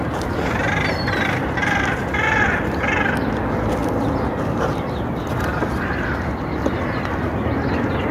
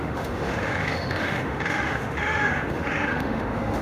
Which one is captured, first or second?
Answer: first